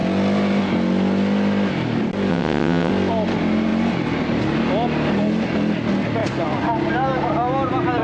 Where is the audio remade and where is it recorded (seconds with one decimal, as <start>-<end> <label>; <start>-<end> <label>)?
0.0-2.3 recorded; 2.3-2.9 remade; 2.9-8.0 recorded